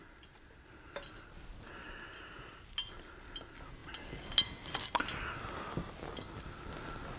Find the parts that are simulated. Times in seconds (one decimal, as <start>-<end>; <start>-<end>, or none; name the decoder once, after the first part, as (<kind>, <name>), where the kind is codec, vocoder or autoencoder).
none